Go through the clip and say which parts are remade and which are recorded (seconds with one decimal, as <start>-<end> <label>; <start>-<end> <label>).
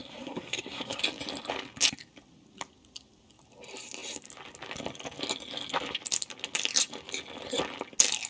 0.0-1.0 remade; 1.0-8.3 recorded